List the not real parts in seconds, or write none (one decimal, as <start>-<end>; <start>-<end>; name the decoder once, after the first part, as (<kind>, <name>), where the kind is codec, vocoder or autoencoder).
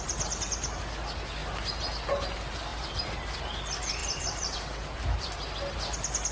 2.7-3.4 (vocoder, BigVGAN v2); 4.0-5.3